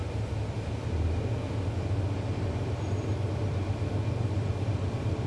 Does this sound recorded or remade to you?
recorded